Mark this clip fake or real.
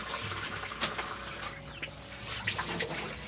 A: real